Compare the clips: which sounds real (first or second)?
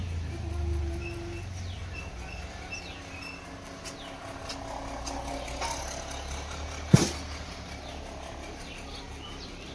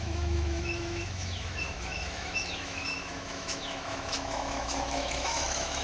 first